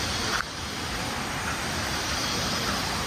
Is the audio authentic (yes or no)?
no